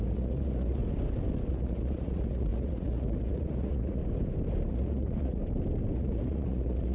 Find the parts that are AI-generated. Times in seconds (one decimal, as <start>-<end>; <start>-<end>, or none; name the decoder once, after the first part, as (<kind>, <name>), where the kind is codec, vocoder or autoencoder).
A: 0.0-0.8 (vocoder, Vocos); 1.5-4.0; 4.7-5.4; 5.9-6.9